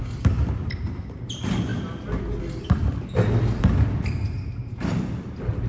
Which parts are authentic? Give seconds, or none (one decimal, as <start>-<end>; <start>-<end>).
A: 0.0-5.7